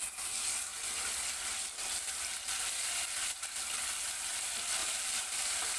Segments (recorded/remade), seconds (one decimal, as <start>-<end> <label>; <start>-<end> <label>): 0.0-4.8 recorded; 4.8-5.8 remade